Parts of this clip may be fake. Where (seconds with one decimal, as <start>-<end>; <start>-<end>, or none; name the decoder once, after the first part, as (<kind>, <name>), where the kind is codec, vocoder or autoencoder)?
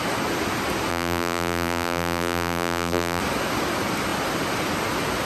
0.9-3.2 (vocoder, BigVGAN v2)